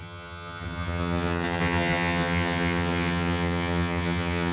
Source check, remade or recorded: remade